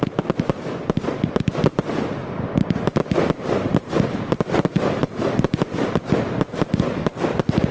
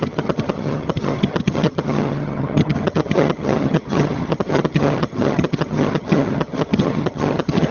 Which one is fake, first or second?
second